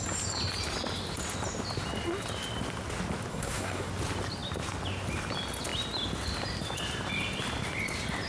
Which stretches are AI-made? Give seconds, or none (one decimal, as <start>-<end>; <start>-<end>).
3.3-3.9